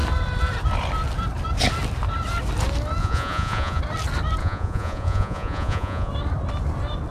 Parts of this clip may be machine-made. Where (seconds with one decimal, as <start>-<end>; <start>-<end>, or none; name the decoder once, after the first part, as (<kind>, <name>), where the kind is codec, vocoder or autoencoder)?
3.0-3.8 (vocoder, Vocos); 4.4-6.1